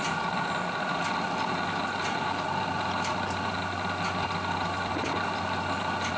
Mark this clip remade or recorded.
recorded